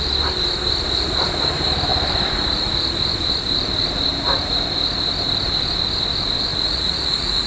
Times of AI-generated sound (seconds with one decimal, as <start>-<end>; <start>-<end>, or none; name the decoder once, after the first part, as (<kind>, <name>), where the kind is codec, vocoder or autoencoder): 6.5-7.5 (vocoder, Vocos)